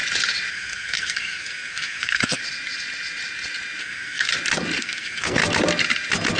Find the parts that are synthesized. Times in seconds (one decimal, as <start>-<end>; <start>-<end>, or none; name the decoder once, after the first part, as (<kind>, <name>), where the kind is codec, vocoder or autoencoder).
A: 0.5-2.4 (codec, SNAC); 3.8-4.3; 4.8-5.4